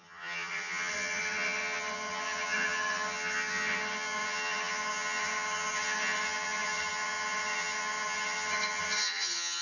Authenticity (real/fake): fake